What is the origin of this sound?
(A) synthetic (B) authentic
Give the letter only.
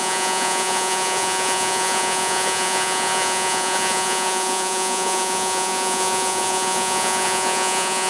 A